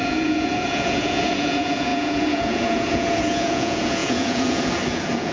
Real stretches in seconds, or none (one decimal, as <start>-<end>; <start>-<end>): none